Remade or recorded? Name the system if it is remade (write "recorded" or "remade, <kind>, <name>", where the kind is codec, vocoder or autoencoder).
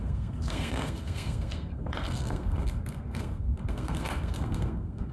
remade, codec, SNAC